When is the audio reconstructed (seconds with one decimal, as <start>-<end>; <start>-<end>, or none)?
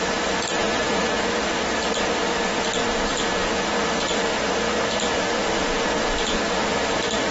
none